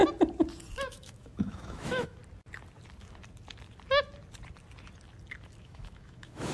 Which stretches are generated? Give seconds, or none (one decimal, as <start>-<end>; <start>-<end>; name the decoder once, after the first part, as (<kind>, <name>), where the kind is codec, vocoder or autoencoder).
0.9-2.2 (autoencoder, DAC-VAE); 5.6-6.5